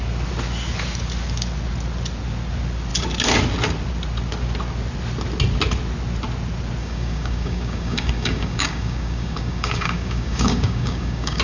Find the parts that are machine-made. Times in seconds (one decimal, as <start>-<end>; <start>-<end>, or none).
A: 6.8-11.4